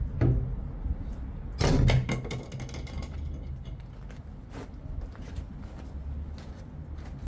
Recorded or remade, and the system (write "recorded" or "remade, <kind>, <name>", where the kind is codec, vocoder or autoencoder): recorded